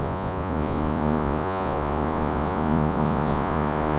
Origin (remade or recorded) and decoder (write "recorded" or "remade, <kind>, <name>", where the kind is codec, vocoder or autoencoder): remade, vocoder, Vocos